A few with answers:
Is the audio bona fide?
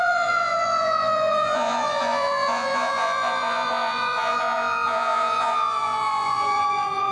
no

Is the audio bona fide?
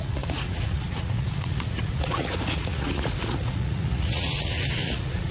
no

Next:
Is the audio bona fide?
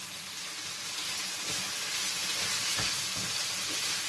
yes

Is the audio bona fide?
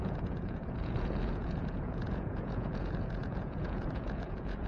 no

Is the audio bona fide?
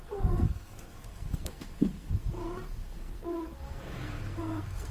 no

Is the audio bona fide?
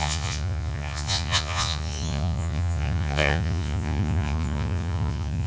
no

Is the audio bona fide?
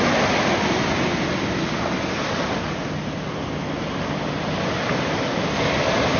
yes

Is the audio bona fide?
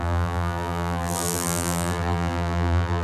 no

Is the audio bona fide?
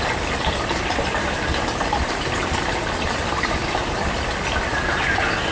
no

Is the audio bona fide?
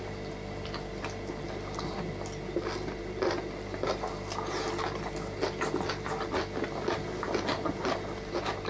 yes